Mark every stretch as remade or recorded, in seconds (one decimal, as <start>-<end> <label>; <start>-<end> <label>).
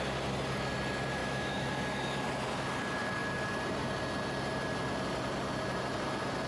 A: 0.0-1.2 recorded; 1.2-1.7 remade; 1.7-6.5 recorded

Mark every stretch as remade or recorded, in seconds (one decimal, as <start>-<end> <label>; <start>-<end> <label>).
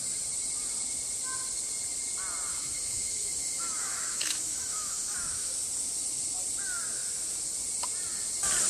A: 0.0-2.5 recorded; 2.5-5.6 remade; 5.6-8.7 recorded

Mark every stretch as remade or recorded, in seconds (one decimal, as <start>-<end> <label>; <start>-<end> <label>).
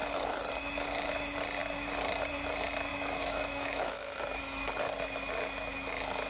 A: 0.0-2.9 recorded; 2.9-4.4 remade; 4.4-6.3 recorded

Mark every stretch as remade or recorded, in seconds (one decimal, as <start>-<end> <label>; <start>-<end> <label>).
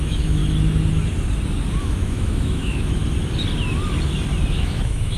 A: 0.0-0.4 remade; 0.4-1.8 recorded; 1.8-3.0 remade; 3.0-4.5 recorded; 4.5-5.2 remade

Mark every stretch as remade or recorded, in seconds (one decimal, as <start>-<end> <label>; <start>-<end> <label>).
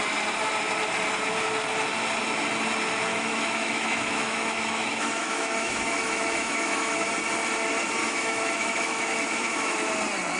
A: 0.0-3.1 recorded; 3.1-7.1 remade; 7.1-8.0 recorded; 8.0-9.9 remade; 9.9-10.4 recorded